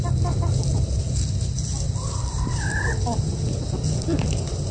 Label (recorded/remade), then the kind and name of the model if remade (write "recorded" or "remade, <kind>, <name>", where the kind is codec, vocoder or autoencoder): recorded